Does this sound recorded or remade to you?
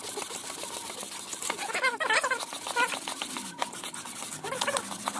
remade